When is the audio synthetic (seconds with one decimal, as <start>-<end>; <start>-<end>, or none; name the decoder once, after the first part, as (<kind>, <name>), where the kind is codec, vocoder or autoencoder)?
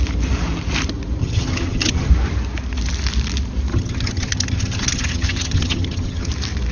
1.2-2.1 (vocoder, HiFi-GAN); 3.7-6.3